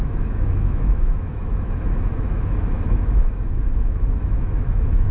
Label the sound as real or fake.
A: fake